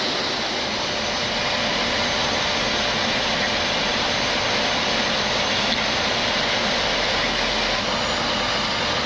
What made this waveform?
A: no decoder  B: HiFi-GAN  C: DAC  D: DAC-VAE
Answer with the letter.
A